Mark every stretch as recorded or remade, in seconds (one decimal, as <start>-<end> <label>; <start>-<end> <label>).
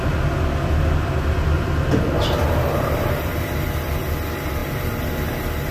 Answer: 0.0-5.7 recorded